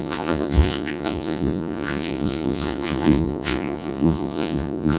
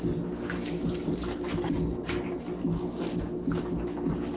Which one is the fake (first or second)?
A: first